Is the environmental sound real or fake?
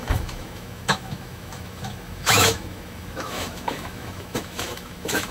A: fake